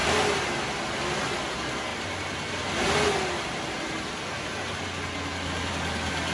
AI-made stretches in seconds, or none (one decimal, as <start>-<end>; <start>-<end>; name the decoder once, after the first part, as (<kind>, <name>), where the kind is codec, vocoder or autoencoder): none